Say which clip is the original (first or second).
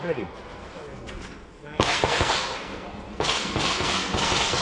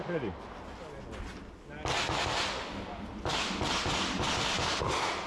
second